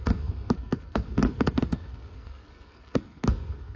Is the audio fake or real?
fake